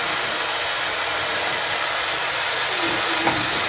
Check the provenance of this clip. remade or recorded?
recorded